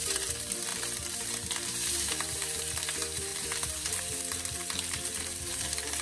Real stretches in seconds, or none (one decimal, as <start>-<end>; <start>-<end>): none